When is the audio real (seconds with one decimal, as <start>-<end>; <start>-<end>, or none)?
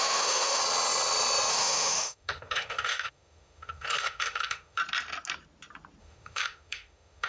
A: 0.6-1.5; 4.8-6.0